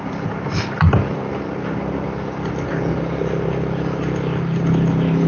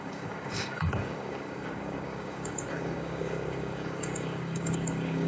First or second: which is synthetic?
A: second